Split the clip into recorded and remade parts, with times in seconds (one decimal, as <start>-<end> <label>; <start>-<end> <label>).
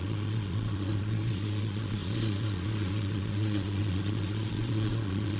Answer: 0.0-5.4 remade